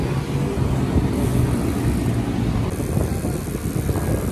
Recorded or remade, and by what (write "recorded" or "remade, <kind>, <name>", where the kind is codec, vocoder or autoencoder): recorded